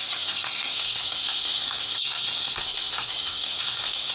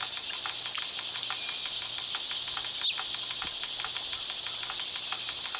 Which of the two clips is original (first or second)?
second